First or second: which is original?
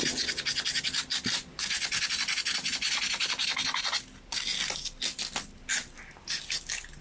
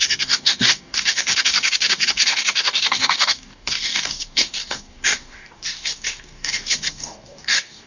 first